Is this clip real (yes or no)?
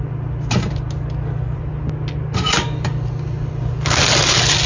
yes